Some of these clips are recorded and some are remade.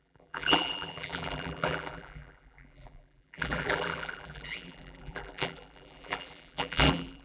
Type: remade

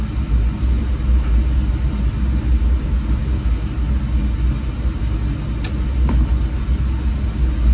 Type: recorded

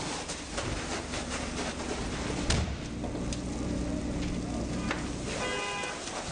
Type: recorded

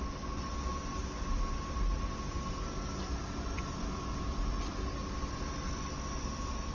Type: recorded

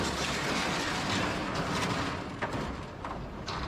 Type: recorded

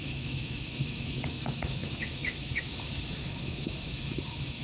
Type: remade